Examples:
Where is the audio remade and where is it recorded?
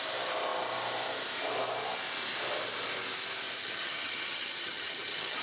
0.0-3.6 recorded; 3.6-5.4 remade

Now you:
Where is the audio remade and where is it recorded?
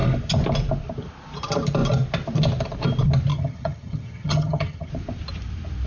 0.0-3.3 recorded; 3.3-4.9 remade; 4.9-5.9 recorded